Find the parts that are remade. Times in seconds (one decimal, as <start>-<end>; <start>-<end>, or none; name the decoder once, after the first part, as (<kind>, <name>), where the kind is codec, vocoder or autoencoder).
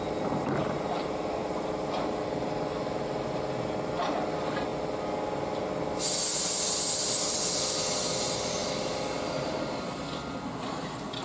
none